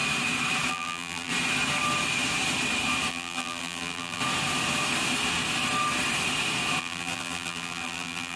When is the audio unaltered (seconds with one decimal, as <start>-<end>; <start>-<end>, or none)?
0.0-0.7; 1.3-3.1; 4.2-6.8